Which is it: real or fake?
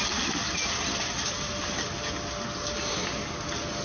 real